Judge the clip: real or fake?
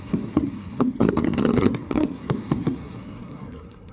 fake